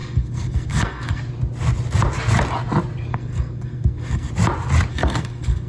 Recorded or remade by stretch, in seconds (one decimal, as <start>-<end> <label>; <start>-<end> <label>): 0.0-1.2 remade; 1.2-3.1 recorded; 3.1-4.3 remade; 4.3-4.9 recorded; 4.9-5.7 remade